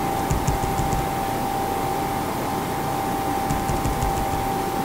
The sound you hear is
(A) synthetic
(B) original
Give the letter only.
B